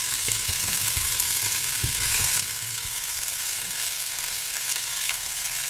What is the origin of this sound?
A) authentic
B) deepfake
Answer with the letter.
B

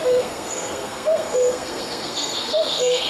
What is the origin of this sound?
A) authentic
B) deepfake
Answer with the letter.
B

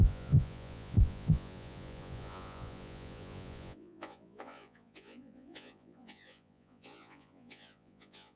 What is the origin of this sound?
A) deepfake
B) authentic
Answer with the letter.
A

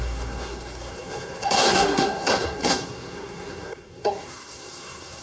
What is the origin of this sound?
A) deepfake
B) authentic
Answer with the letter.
A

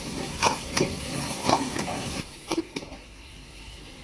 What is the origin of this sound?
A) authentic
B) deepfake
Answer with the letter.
B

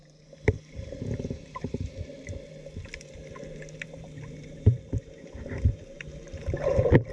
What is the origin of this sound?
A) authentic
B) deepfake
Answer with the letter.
B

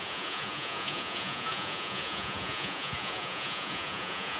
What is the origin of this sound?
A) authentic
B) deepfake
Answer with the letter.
B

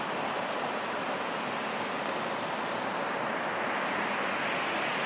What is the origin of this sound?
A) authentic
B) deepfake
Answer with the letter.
A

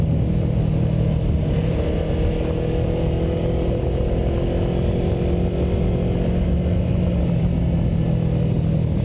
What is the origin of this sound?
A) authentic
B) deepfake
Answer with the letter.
A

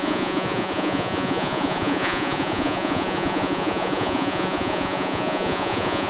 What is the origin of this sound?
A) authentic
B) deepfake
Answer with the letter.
B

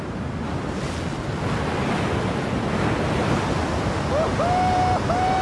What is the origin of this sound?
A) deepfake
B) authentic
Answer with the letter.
B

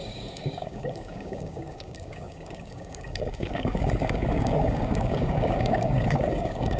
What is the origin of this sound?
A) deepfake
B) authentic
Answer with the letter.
A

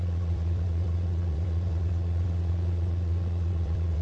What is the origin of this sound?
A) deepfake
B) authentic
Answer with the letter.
A